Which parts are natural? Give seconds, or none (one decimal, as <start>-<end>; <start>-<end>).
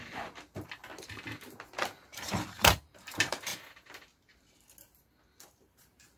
0.8-2.1; 3.5-5.5